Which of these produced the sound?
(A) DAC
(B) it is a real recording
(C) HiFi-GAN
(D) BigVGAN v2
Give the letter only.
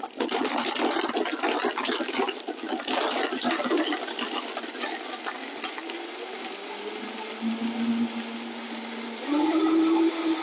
B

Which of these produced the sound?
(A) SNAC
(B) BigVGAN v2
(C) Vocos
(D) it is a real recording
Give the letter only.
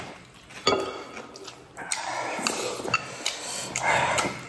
D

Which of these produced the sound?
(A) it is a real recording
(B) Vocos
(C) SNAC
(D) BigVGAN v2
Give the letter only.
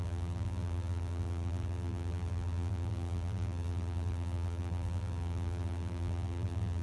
D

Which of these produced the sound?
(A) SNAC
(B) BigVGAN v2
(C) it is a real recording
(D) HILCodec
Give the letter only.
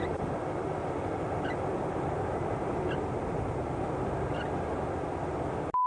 C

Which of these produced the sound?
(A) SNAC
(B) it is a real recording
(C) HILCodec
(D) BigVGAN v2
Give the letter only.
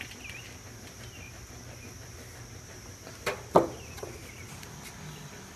B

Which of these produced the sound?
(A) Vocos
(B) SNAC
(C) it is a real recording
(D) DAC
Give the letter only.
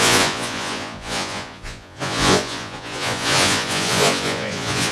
A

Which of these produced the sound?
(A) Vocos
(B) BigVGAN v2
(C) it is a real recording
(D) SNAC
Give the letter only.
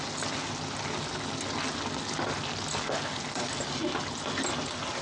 C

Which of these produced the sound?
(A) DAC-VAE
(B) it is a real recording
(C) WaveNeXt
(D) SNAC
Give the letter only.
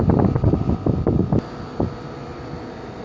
B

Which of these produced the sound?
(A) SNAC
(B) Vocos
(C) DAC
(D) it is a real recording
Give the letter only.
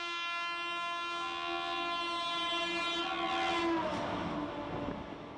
D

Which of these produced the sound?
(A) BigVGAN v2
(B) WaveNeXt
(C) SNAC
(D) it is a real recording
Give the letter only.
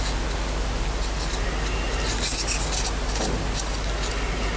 D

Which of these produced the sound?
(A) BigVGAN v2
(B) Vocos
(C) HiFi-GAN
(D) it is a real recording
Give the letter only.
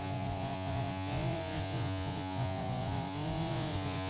B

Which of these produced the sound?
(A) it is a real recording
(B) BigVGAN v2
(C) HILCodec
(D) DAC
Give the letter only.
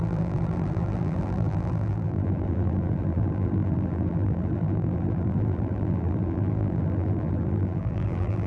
B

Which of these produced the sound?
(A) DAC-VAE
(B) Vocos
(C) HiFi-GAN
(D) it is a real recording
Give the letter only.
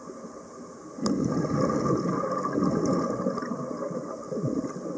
D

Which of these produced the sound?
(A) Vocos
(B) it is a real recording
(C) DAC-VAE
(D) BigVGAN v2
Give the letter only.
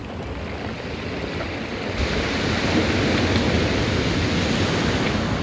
B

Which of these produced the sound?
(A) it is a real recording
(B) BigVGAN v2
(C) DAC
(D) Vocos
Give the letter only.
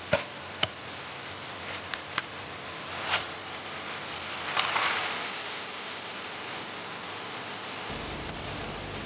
A